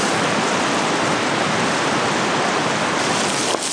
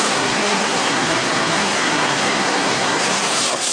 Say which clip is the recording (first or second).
first